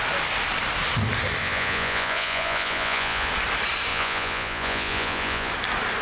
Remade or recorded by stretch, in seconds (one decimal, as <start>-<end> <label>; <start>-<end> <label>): 0.0-1.4 recorded; 1.4-3.3 remade; 3.3-3.9 recorded; 3.9-5.5 remade; 5.5-6.0 recorded